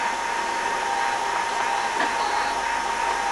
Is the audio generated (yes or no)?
no